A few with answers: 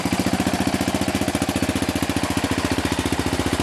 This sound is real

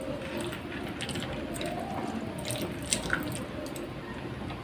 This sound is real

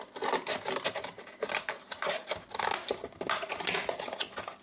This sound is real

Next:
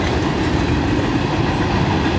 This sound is real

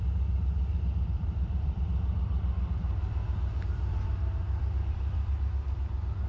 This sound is fake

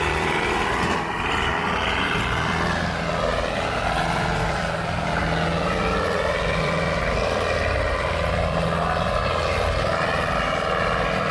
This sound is fake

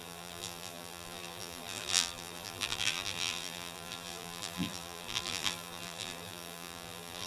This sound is fake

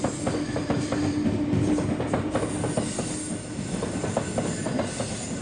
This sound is real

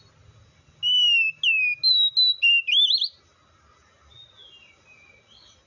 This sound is real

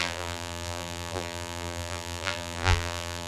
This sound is fake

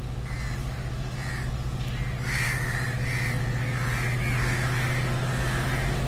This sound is real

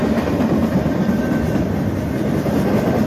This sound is fake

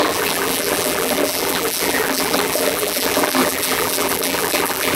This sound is fake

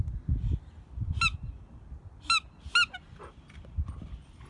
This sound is real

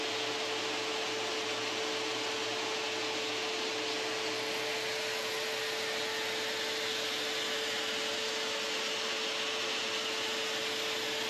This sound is real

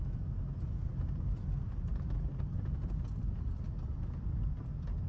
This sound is real